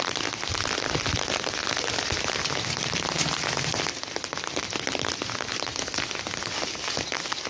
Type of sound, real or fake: real